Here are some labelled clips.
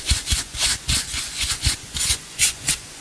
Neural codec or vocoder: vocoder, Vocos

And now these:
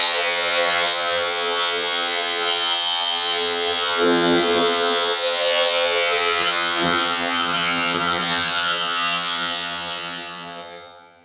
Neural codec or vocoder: vocoder, HiFi-GAN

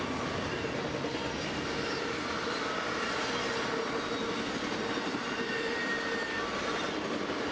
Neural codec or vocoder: none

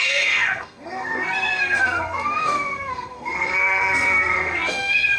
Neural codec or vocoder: codec, SNAC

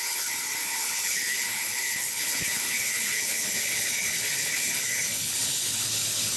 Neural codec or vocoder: codec, HILCodec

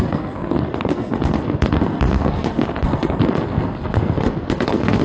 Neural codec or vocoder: codec, SNAC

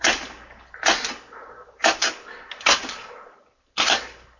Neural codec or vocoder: none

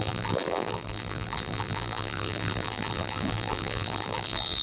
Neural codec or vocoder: vocoder, BigVGAN v2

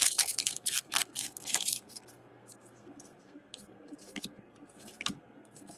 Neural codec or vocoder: codec, SNAC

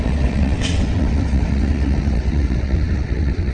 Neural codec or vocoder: vocoder, WaveNeXt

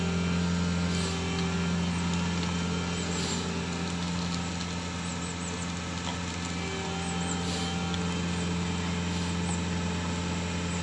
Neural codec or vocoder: none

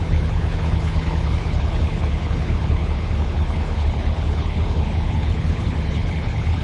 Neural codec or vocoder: codec, HILCodec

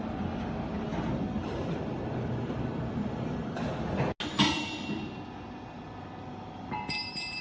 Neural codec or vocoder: none